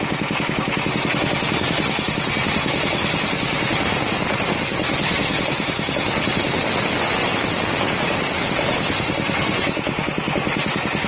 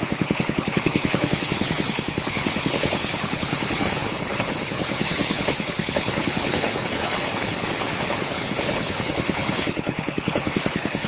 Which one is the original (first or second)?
first